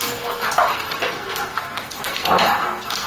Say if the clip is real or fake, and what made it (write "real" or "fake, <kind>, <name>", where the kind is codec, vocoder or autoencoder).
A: fake, codec, SNAC